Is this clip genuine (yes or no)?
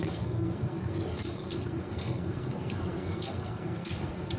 no